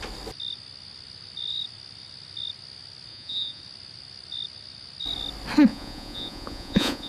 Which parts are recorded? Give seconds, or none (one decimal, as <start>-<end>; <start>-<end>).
0.0-3.1; 3.6-5.7